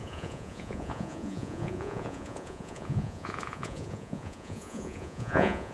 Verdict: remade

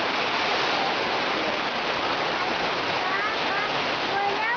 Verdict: recorded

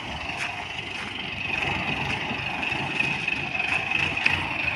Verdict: recorded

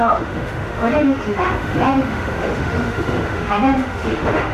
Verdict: remade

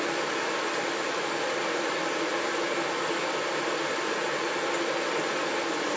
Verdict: recorded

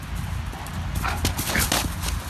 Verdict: recorded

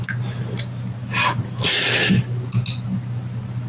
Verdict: recorded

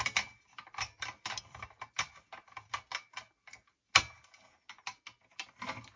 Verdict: recorded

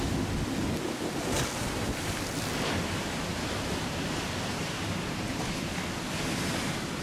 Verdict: recorded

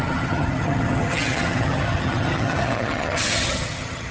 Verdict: remade